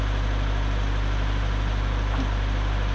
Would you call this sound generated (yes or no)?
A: no